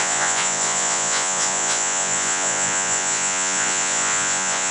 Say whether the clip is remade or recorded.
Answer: remade